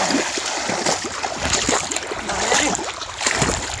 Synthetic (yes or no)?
no